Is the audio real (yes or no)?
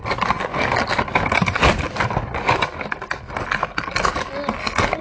yes